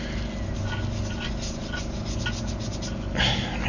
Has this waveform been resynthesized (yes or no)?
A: no